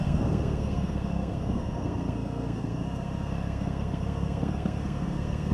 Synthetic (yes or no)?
yes